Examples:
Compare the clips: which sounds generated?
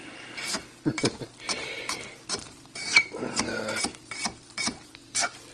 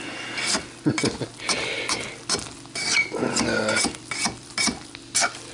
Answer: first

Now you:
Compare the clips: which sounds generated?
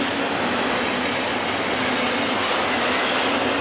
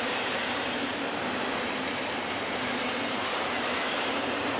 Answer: second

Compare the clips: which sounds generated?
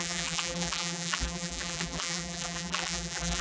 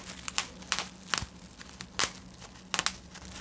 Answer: first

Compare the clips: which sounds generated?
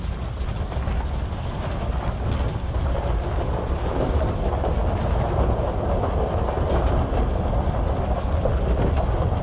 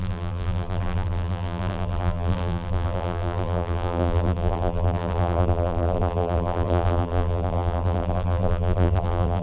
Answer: second